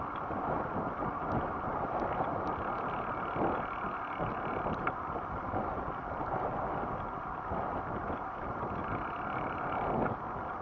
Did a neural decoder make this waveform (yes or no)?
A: no